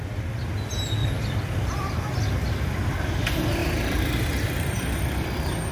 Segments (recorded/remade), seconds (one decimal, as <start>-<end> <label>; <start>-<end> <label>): 0.0-1.0 recorded; 1.0-1.9 remade; 1.9-3.6 recorded; 3.6-5.7 remade